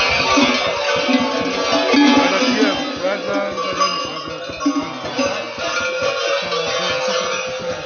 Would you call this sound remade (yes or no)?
no